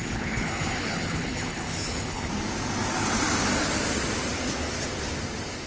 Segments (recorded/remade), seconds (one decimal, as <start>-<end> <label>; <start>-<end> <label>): 0.0-2.3 remade; 2.3-5.7 recorded